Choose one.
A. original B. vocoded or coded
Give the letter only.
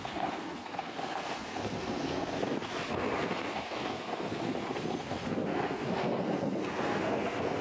B